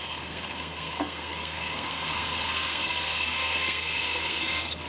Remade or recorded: remade